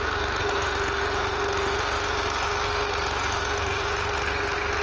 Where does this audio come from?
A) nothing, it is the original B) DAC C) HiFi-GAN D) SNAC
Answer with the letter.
A